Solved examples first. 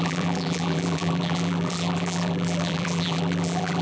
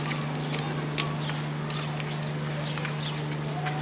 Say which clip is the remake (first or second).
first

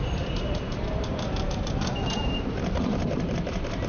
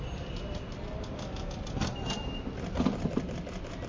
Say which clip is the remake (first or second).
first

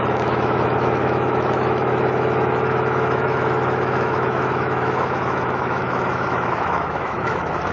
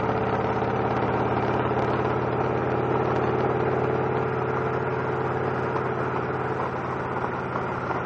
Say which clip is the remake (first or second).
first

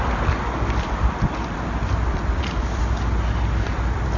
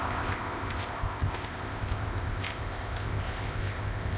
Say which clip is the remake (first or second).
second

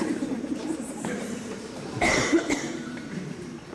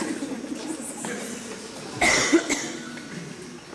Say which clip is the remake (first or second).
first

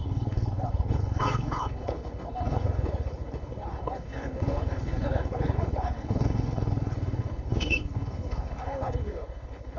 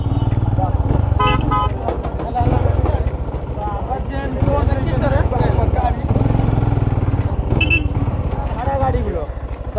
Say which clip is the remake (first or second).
first